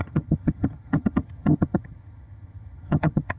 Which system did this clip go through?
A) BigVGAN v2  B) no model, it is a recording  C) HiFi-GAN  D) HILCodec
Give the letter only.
C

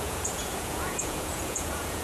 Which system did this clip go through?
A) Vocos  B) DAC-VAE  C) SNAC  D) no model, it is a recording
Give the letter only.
A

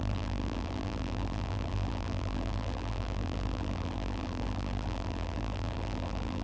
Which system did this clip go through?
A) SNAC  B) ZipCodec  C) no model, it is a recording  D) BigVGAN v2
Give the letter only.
D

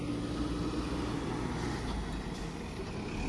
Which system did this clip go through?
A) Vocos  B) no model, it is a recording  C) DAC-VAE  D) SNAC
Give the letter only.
B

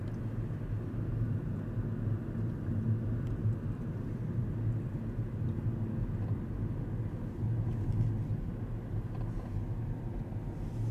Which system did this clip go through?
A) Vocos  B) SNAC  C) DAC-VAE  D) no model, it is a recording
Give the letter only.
D